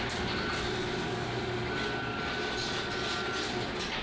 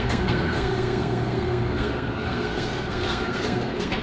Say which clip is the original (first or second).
first